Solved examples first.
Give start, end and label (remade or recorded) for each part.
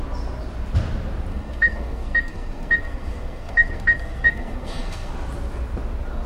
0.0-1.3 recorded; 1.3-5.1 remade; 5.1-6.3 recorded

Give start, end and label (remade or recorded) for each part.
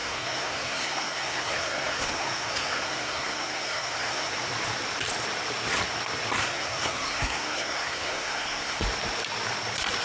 0.0-4.3 remade; 4.3-6.4 recorded; 6.4-8.8 remade; 8.8-10.0 recorded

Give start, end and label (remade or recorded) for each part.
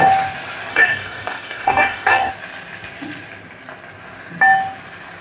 0.0-0.7 recorded; 0.7-2.3 remade; 2.3-5.2 recorded